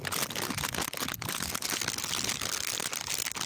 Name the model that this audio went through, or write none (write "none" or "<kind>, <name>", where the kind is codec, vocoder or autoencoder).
none